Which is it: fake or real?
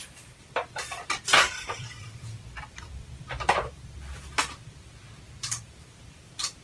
fake